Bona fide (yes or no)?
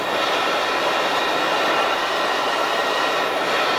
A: yes